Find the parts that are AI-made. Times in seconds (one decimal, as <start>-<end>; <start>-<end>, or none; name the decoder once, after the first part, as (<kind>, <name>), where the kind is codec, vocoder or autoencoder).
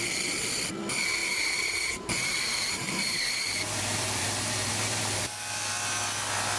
1.2-5.2 (vocoder, BigVGAN v2)